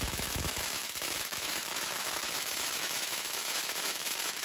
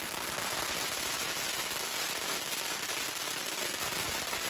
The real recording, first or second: second